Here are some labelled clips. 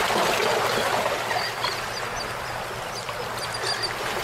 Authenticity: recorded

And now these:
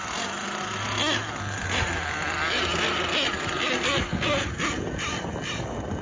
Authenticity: recorded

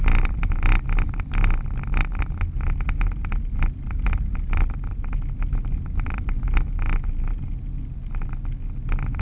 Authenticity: recorded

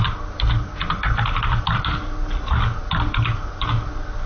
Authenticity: recorded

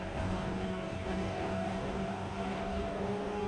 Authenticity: remade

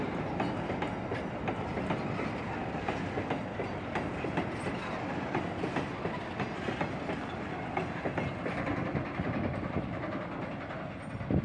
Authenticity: recorded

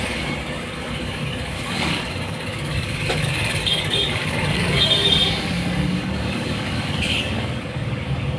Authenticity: remade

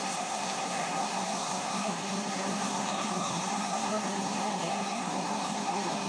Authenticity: remade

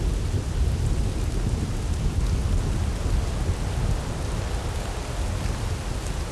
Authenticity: recorded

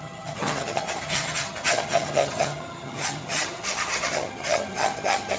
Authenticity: remade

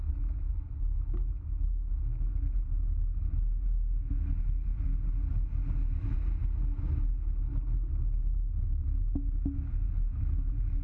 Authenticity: recorded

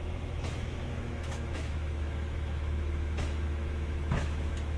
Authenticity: remade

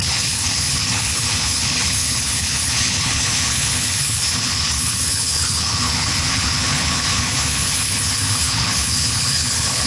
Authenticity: remade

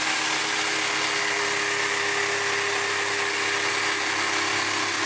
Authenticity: recorded